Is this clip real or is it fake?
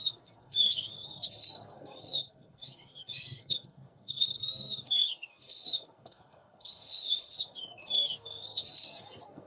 fake